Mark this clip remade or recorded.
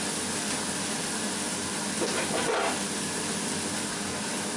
recorded